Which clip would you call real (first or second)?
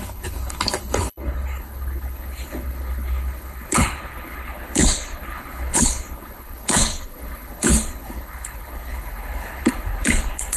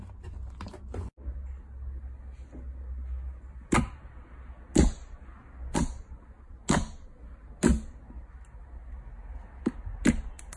second